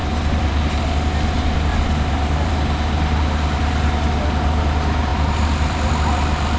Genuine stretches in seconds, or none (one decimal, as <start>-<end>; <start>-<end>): 0.6-1.7; 2.5-5.1; 5.9-6.6

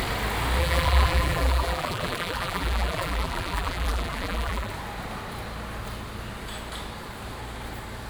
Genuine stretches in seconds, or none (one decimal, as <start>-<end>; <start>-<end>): 0.0-0.6; 4.7-8.1

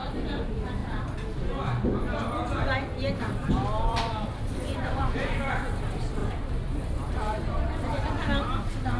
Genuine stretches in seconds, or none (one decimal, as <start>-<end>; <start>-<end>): 0.8-3.2

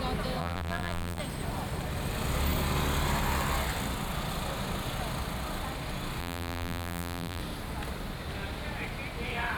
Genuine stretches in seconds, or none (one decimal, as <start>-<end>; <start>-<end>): 0.0-0.4; 1.2-6.2; 7.4-9.6